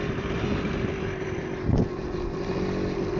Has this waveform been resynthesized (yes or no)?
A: no